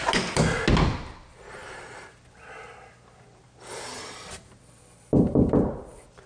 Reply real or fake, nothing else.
real